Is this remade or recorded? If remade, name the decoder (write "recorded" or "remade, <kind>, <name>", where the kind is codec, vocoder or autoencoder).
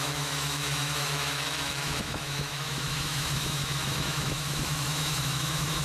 remade, autoencoder, DAC-VAE